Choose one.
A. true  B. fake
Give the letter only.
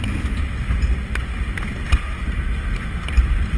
A